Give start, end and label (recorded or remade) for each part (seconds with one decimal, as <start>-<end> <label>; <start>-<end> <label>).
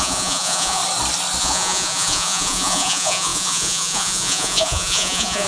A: 0.0-0.8 remade; 0.8-1.4 recorded; 1.4-5.5 remade